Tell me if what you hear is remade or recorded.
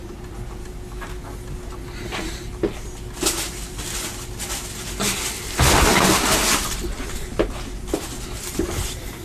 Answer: recorded